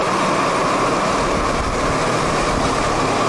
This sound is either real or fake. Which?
real